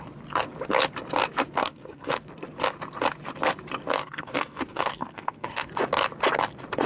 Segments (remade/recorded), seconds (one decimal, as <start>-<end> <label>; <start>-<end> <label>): 0.0-1.6 recorded; 1.6-2.1 remade; 2.1-4.0 recorded; 4.0-5.7 remade; 5.7-6.9 recorded